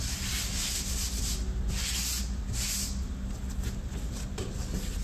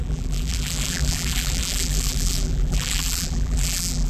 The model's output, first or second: second